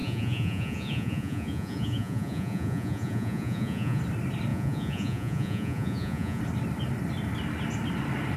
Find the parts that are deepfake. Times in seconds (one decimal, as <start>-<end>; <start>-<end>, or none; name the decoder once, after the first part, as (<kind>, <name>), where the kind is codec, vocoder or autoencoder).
0.0-4.0 (vocoder, Vocos); 4.5-6.4